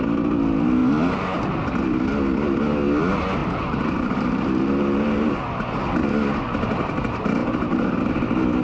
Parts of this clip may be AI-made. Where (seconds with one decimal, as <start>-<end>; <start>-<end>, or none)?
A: 3.4-5.3; 7.4-8.1